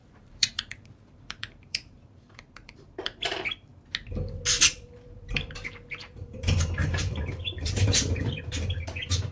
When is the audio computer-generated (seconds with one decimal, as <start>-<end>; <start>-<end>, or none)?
0.0-3.7; 4.6-9.3

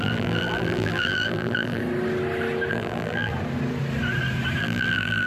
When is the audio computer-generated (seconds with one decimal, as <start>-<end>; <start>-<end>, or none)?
0.0-1.8; 2.7-3.3; 4.6-5.3

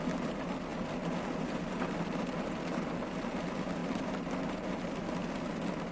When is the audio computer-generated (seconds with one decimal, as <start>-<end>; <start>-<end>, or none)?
none